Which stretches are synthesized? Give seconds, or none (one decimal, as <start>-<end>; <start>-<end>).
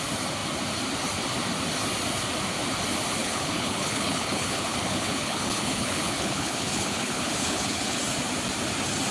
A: 3.2-8.0